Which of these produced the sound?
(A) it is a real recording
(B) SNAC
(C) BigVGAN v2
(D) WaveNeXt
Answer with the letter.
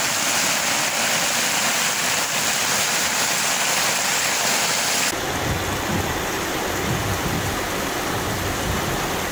A